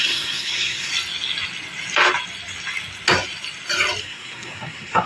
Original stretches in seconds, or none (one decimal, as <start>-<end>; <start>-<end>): 0.9-4.0